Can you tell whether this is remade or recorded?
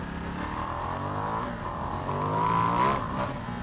recorded